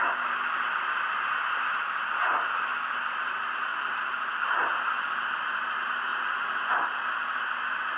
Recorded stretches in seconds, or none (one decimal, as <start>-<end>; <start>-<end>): 0.0-3.7; 4.4-6.1; 6.7-8.0